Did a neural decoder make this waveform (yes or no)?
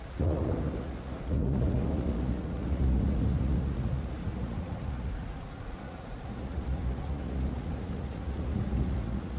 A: yes